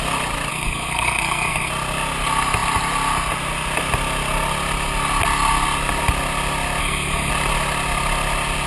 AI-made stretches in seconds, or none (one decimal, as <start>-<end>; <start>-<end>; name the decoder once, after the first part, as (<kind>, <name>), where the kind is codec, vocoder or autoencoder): 0.5-1.7 (codec, SNAC); 6.8-7.3

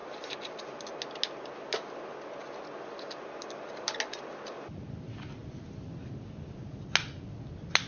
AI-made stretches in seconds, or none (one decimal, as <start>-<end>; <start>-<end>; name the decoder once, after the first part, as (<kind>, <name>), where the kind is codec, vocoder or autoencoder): none

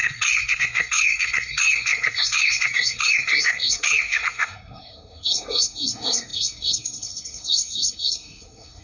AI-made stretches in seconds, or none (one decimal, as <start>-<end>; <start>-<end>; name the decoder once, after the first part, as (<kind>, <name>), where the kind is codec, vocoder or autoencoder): 0.0-8.8 (codec, SNAC)

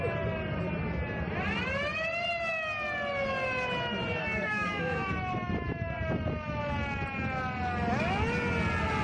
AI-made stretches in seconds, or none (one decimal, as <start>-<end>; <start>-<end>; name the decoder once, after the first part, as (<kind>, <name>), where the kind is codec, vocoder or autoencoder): 4.2-5.1 (codec, SNAC)